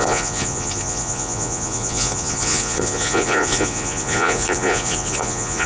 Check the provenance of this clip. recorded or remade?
remade